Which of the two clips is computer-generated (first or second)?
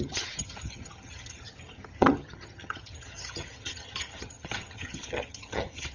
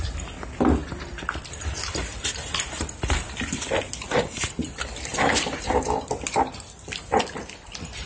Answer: first